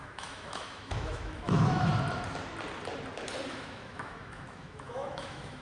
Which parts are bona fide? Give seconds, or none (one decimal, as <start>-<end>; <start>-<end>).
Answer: 1.9-3.5